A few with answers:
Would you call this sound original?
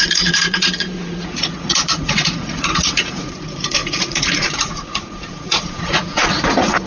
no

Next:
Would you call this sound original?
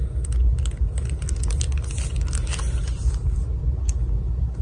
yes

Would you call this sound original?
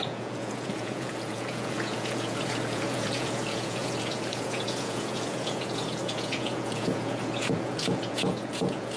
no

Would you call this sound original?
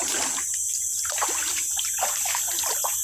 yes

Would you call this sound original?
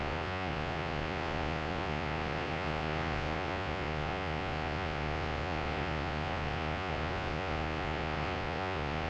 no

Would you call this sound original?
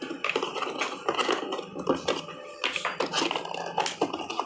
yes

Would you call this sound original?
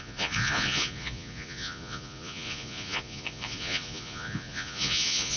no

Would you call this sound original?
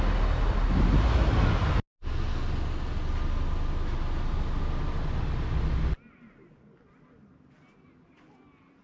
yes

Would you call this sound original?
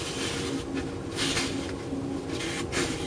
yes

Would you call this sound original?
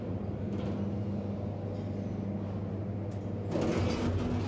yes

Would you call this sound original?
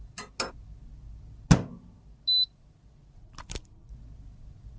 yes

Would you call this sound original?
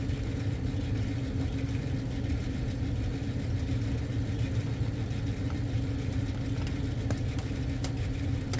yes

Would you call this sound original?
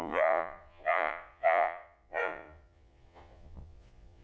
no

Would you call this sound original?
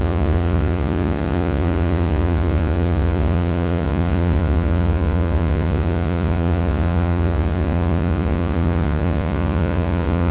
no